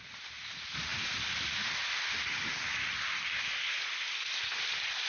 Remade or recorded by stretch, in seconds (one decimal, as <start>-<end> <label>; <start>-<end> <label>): 0.0-5.1 recorded